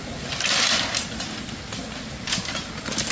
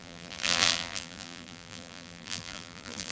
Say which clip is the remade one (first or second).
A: second